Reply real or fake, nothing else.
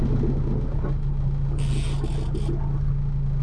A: real